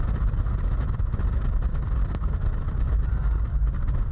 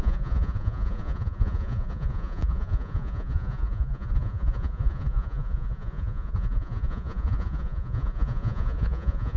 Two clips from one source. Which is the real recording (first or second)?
first